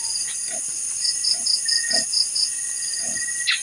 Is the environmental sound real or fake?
real